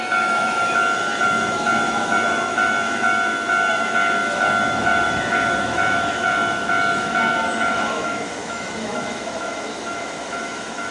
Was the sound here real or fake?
fake